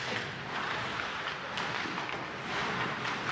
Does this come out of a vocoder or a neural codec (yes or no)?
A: no